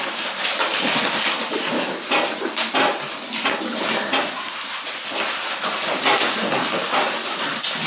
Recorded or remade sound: recorded